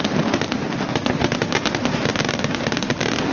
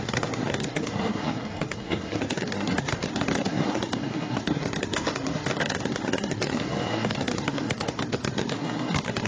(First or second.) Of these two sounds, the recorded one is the first